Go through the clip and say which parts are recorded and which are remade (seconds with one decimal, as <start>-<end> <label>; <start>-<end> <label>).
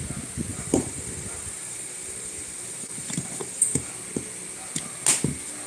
0.0-0.5 recorded; 0.5-3.9 remade; 3.9-5.7 recorded